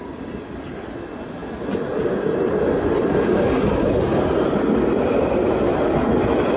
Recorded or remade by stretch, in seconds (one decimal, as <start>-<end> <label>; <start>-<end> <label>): 0.0-6.6 recorded